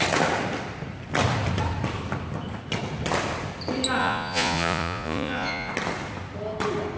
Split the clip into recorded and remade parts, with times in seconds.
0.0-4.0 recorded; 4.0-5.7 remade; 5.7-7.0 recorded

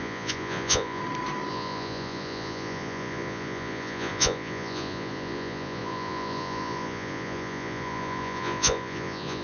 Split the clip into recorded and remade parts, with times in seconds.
0.0-1.0 remade; 1.0-1.5 recorded; 1.5-9.4 remade

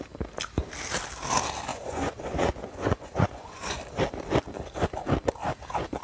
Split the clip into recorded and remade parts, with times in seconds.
0.0-1.7 recorded; 1.7-3.8 remade; 3.8-6.0 recorded

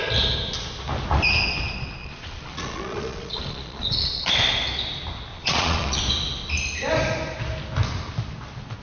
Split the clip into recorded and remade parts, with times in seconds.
0.0-2.0 recorded; 2.0-4.3 remade; 4.3-5.3 recorded; 5.3-6.0 remade; 6.0-8.8 recorded

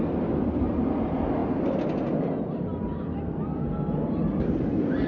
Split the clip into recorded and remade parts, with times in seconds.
0.0-5.1 recorded

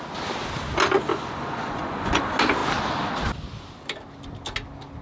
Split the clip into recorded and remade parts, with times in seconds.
0.0-1.1 recorded; 1.1-2.2 remade; 2.2-5.0 recorded

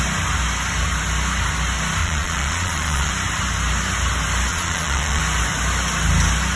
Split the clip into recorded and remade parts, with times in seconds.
0.0-2.0 recorded; 2.0-3.1 remade; 3.1-4.5 recorded; 4.5-5.2 remade; 5.2-6.6 recorded